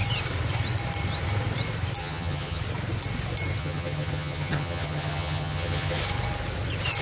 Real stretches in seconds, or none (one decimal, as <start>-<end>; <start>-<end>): 0.0-2.0; 2.6-3.6; 6.0-7.0

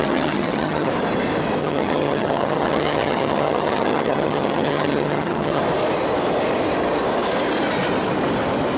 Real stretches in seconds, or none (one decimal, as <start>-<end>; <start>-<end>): 0.9-1.6; 5.6-8.8

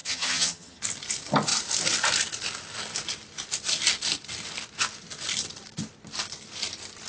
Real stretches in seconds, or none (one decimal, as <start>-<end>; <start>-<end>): 0.8-7.1